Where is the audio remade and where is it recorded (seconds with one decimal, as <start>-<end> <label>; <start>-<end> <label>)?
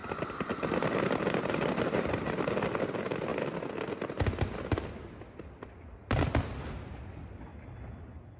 0.0-2.4 remade; 2.4-8.4 recorded